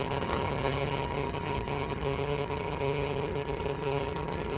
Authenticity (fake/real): fake